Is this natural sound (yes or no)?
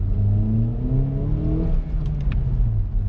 yes